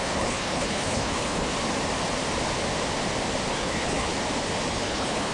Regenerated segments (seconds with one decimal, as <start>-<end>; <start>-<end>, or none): 0.0-1.5; 3.5-4.1; 4.7-5.3